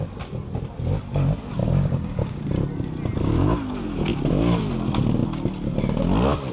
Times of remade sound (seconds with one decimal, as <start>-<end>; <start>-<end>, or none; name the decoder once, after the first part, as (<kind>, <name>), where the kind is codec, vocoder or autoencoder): 1.6-2.4 (codec, DAC)